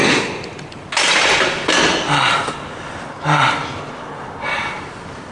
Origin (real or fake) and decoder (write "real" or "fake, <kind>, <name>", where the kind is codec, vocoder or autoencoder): real